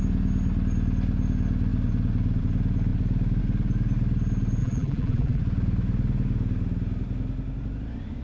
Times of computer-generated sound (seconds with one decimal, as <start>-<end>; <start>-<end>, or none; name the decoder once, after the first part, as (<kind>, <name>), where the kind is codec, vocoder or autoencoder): 4.6-5.4 (vocoder, BigVGAN v2)